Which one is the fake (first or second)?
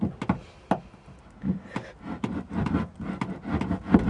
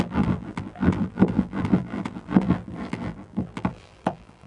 second